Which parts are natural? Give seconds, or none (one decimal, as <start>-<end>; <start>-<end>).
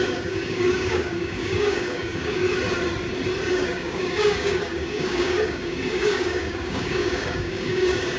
2.4-3.5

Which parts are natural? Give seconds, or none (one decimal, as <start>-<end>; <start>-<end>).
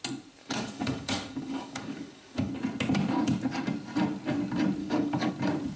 0.0-0.4; 2.5-4.8; 5.3-5.8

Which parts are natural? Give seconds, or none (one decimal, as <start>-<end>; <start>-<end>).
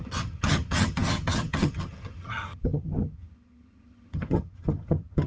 none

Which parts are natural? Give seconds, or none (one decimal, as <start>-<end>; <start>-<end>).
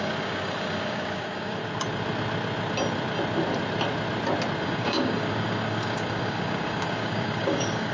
1.6-4.6